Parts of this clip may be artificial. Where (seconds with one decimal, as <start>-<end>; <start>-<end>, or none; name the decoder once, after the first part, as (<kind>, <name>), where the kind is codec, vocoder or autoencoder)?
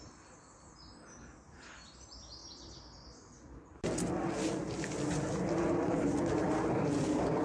none